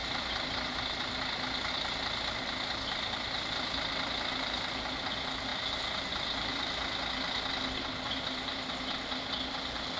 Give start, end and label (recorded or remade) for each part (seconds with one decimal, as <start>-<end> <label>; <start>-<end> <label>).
0.0-10.0 recorded

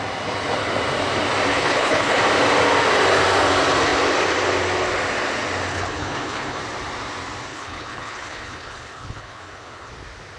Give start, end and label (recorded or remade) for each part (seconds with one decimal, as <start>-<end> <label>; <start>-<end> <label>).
0.0-1.5 recorded; 1.5-2.2 remade; 2.2-5.7 recorded; 5.7-6.6 remade; 6.6-7.5 recorded; 7.5-9.9 remade; 9.9-10.4 recorded

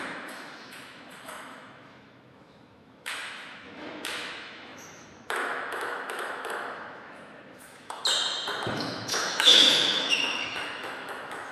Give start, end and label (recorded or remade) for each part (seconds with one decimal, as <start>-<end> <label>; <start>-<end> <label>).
0.0-8.0 remade; 8.0-8.7 recorded; 8.7-11.5 remade

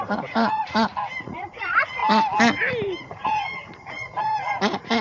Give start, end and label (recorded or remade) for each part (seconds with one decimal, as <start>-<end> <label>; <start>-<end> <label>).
0.0-2.0 remade; 2.0-3.0 recorded; 3.0-5.0 remade

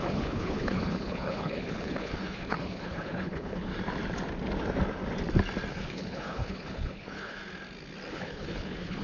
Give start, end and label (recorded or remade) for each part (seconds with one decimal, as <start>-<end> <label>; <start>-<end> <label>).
0.0-3.7 remade; 3.7-5.7 recorded; 5.7-7.4 remade; 7.4-8.1 recorded; 8.1-9.0 remade

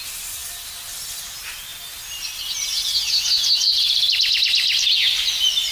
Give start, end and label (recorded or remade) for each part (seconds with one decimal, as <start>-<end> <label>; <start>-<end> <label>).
0.0-5.7 recorded